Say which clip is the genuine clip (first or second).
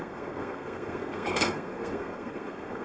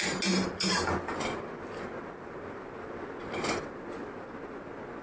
second